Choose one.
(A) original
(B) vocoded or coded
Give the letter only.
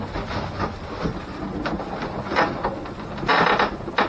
A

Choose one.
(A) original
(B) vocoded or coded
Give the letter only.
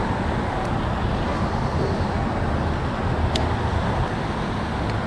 A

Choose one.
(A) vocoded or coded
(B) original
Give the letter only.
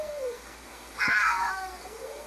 A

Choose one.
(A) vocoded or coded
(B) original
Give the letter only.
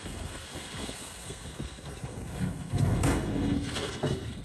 A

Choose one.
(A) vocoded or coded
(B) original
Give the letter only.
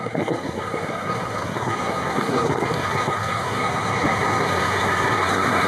A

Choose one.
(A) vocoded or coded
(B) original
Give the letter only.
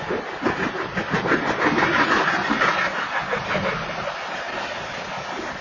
B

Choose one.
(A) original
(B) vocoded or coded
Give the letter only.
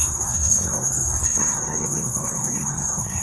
B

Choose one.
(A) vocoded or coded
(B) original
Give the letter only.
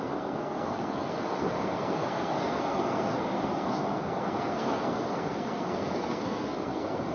A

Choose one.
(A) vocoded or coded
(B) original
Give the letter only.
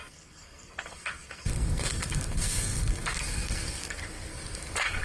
A